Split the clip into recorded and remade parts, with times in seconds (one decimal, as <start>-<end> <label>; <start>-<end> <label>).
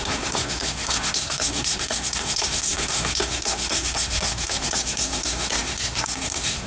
0.0-6.7 remade